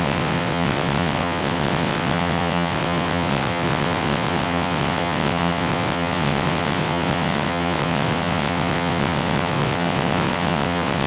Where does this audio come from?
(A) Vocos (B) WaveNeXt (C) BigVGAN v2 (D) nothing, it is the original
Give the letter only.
B